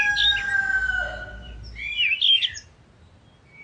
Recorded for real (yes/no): yes